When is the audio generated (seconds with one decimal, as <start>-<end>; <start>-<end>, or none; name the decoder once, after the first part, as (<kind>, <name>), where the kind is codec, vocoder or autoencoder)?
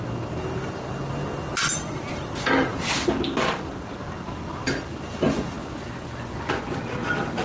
5.6-6.8 (vocoder, Vocos)